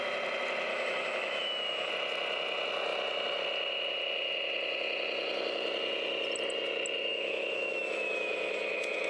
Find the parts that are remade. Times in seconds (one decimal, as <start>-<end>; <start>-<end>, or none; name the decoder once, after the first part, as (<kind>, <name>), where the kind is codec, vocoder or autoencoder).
0.7-1.9 (autoencoder, DAC-VAE); 7.1-9.1